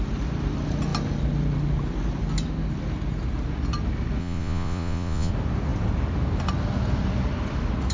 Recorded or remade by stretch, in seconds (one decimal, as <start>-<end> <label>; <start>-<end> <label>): 0.0-4.2 recorded; 4.2-5.3 remade; 5.3-7.9 recorded